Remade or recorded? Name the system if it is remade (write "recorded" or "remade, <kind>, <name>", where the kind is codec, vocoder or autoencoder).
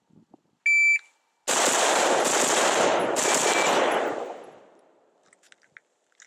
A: recorded